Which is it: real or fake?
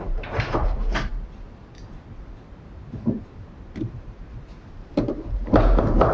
fake